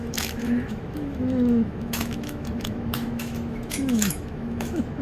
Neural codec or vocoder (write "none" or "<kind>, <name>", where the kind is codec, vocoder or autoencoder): autoencoder, DAC-VAE